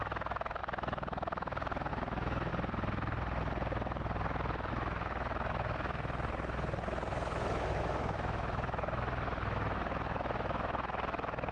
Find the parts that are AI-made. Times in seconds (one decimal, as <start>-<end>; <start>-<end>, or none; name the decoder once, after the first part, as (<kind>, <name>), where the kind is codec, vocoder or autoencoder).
0.0-2.5 (autoencoder, DAC-VAE); 4.7-11.5

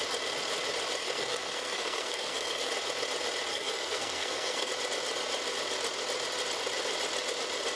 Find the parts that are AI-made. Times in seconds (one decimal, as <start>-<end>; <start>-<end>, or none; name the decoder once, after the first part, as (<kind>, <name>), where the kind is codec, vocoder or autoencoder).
1.0-2.7 (codec, SNAC); 3.5-4.7

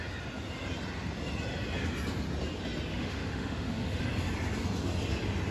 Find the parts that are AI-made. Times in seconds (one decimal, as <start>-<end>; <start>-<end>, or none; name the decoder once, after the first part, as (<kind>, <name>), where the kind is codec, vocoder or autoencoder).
2.9-4.0 (autoencoder, DAC-VAE)

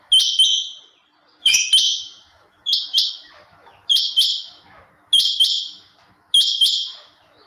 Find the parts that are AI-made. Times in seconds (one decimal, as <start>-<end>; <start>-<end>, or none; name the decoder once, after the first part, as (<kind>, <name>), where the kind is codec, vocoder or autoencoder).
0.0-0.6 (autoencoder, DAC-VAE); 1.4-7.5

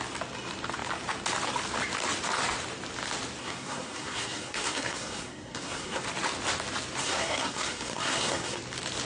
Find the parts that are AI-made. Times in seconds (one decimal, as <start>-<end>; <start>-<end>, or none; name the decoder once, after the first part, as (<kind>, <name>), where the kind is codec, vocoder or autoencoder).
3.4-6.0 (codec, SNAC); 7.0-8.6

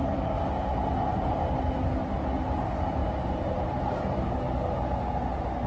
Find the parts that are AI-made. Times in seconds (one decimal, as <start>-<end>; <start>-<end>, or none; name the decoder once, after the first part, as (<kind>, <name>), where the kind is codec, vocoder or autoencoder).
none